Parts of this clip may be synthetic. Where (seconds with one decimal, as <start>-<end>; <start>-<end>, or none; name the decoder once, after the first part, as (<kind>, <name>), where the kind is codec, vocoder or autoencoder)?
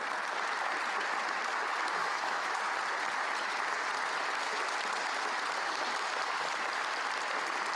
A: 2.0-2.6 (autoencoder, DAC-VAE)